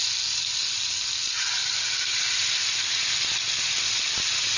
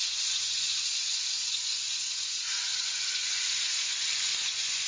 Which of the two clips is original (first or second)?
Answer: first